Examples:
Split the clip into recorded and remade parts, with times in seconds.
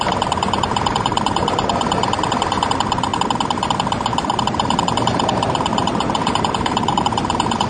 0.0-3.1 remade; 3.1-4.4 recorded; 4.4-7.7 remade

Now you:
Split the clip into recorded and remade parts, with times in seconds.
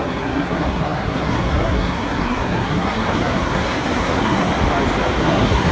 0.0-4.5 remade; 4.5-5.2 recorded; 5.2-5.7 remade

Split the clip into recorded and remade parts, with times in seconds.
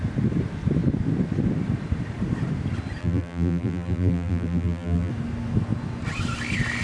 0.0-3.0 recorded; 3.0-5.1 remade; 5.1-6.8 recorded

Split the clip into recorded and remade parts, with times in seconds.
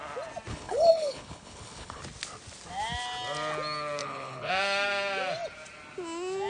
0.0-0.5 recorded; 0.5-2.0 remade; 2.0-4.0 recorded; 4.0-4.5 remade; 4.5-6.5 recorded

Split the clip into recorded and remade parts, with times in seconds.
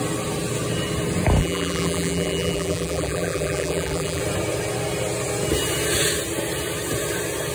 0.0-1.4 recorded; 1.4-4.2 remade; 4.2-7.5 recorded